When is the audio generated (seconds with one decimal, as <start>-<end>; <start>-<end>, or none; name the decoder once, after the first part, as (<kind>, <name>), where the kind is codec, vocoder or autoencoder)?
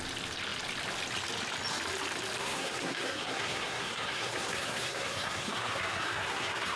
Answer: 2.4-6.8 (codec, SNAC)